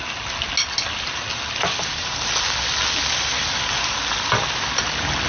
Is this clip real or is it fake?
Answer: real